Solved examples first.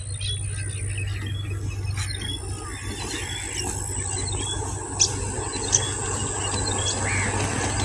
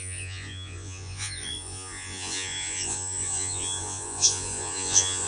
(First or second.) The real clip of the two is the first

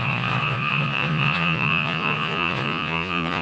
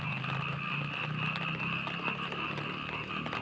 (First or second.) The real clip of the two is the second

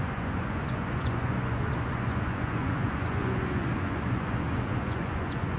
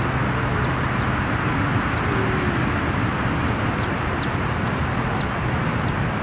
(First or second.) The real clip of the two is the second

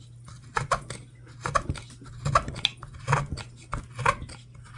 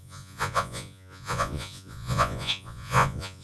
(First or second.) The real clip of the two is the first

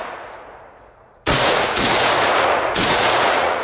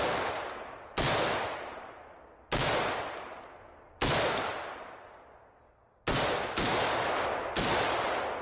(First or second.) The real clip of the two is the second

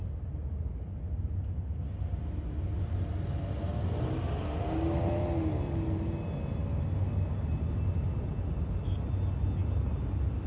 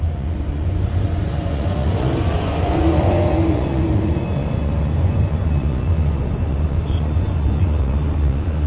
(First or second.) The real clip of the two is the first